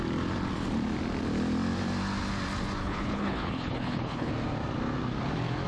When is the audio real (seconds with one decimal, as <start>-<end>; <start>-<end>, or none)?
0.0-2.8; 4.3-5.7